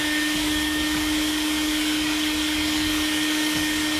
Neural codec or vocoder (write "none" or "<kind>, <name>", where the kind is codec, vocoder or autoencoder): codec, DAC